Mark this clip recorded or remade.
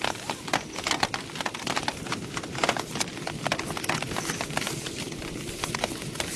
recorded